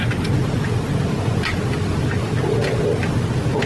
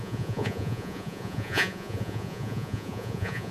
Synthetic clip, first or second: second